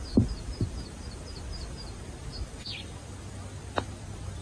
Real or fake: real